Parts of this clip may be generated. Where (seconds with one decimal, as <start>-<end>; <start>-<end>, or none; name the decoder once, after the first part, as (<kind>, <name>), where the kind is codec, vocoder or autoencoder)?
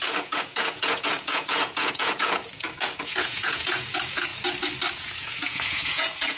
0.0-4.3 (vocoder, Vocos); 4.9-6.4